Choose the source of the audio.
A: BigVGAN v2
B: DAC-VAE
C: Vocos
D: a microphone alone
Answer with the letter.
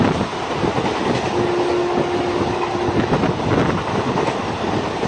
D